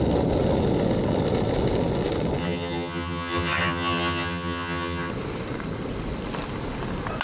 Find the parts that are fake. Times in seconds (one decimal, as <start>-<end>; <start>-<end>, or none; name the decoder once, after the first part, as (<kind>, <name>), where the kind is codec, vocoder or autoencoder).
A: 2.4-5.1 (vocoder, HiFi-GAN)